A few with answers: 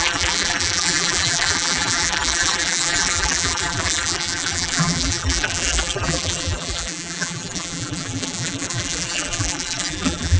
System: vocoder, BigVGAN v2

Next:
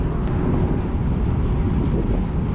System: none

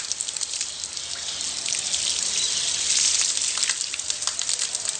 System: none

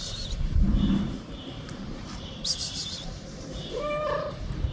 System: vocoder, BigVGAN v2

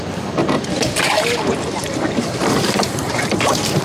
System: vocoder, BigVGAN v2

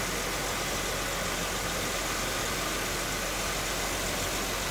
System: none